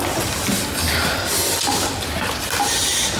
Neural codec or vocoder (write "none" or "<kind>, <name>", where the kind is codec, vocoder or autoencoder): none